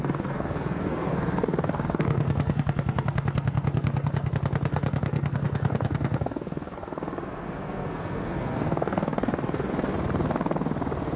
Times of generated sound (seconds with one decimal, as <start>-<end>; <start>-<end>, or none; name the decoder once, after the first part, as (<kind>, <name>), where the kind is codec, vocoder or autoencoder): 0.0-4.3 (codec, SNAC); 4.7-9.7